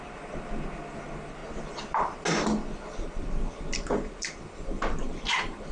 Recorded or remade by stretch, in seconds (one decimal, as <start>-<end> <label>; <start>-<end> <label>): 0.0-5.7 recorded